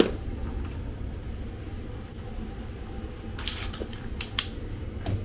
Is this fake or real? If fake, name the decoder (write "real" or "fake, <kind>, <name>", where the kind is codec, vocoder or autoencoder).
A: fake, vocoder, BigVGAN v2